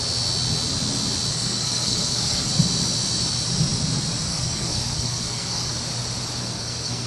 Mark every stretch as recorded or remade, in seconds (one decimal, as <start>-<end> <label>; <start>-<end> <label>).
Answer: 0.0-1.3 recorded; 1.3-2.5 remade; 2.5-4.3 recorded; 4.3-5.7 remade; 5.7-6.4 recorded; 6.4-7.1 remade